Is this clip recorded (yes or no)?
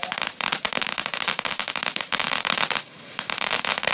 no